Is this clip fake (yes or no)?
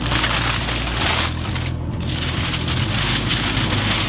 no